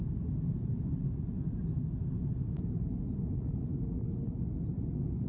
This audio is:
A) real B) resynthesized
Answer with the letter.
A